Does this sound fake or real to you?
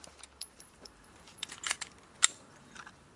fake